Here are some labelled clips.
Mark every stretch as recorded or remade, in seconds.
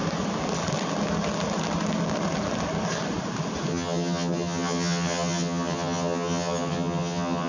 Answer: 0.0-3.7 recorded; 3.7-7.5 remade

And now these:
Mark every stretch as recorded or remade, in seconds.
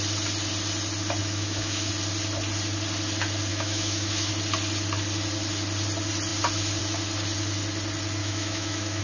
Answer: 0.0-1.2 recorded; 1.2-1.9 remade; 1.9-3.5 recorded; 3.5-4.3 remade; 4.3-8.2 recorded; 8.2-9.0 remade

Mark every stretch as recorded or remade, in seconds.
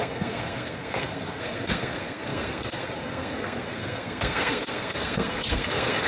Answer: 0.0-6.1 remade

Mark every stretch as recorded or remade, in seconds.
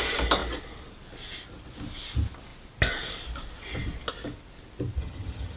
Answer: 0.0-5.0 recorded; 5.0-5.6 remade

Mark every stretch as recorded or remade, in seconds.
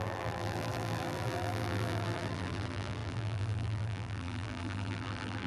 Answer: 0.0-5.5 remade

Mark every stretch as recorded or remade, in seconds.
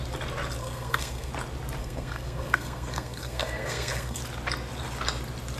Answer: 0.0-0.6 recorded; 0.6-1.3 remade; 1.3-1.8 recorded; 1.8-4.2 remade; 4.2-5.6 recorded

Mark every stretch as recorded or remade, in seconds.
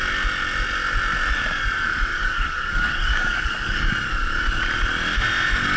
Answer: 0.0-2.1 recorded; 2.1-3.9 remade; 3.9-5.8 recorded